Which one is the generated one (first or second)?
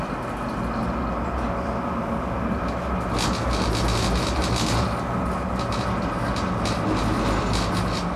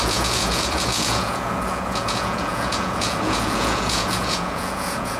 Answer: second